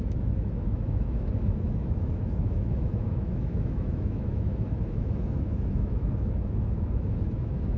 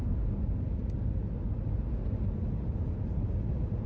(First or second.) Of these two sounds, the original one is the second